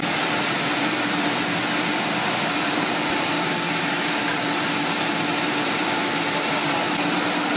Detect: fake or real fake